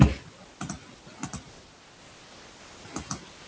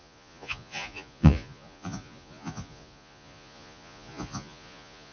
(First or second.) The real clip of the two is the first